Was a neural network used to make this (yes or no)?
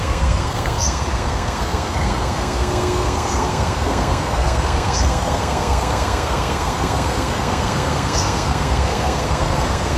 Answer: yes